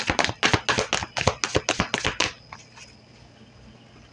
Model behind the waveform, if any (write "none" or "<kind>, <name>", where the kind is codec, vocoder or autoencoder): none